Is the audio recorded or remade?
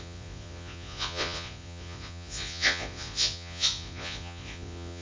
remade